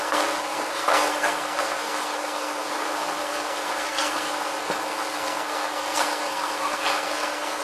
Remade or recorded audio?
remade